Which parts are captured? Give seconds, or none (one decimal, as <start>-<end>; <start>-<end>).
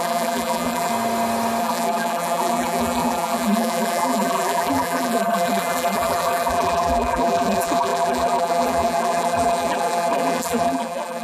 0.9-1.6